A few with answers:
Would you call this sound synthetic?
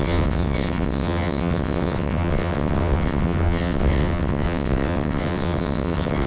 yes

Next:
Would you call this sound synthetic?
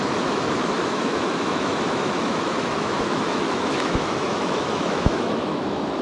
yes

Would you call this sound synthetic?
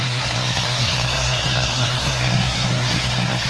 yes